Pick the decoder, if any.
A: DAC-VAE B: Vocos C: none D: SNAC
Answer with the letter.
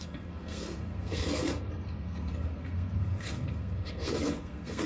D